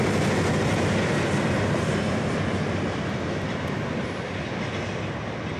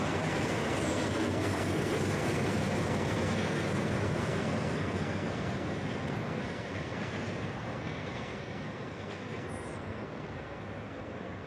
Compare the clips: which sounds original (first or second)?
first